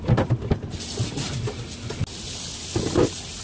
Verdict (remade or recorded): recorded